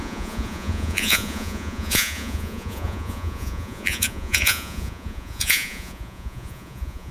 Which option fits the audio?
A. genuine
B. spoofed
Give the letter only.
B